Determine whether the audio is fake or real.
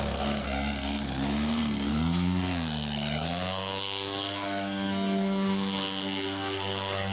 fake